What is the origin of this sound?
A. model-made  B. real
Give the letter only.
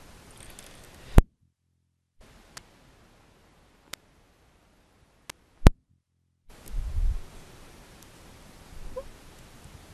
B